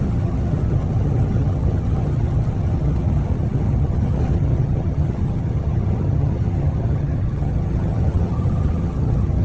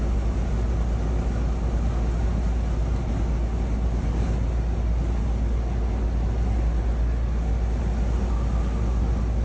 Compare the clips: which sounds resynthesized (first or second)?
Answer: first